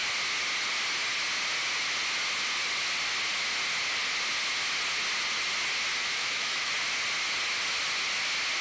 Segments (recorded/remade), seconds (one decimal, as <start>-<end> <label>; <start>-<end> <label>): 0.0-6.0 recorded; 6.0-6.7 remade; 6.7-8.6 recorded